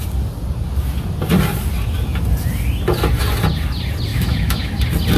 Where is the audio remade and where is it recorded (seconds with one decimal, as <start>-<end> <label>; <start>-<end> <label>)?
0.0-4.1 recorded; 4.1-4.8 remade; 4.8-5.2 recorded

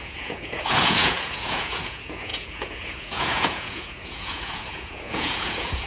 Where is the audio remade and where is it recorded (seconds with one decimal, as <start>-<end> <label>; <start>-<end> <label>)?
0.0-5.9 remade

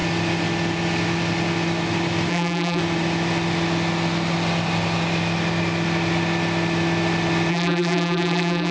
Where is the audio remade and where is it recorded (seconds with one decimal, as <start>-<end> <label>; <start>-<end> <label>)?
0.0-2.3 recorded; 2.3-2.8 remade; 2.8-7.5 recorded; 7.5-8.7 remade

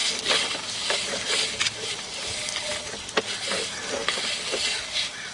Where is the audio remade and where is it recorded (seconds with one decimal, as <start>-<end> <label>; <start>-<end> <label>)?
0.0-5.3 recorded

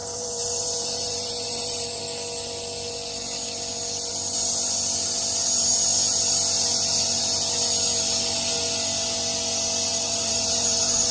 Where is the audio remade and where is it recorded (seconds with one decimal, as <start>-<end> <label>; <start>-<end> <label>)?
0.0-2.0 remade; 2.0-9.9 recorded; 9.9-11.1 remade

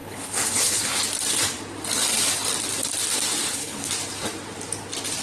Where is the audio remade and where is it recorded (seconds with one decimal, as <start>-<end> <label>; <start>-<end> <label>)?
0.0-1.0 remade; 1.0-3.4 recorded; 3.4-3.9 remade; 3.9-5.2 recorded

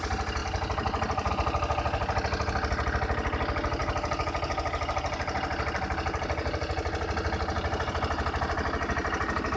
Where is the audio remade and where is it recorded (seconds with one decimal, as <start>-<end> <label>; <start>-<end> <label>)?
0.0-9.6 recorded

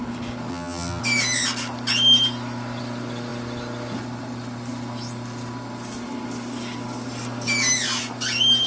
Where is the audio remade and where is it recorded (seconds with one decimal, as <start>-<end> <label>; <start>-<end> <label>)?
0.0-0.5 recorded; 0.5-1.0 remade; 1.0-8.7 recorded